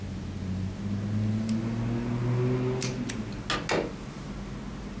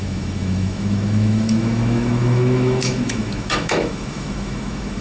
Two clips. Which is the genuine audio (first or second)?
first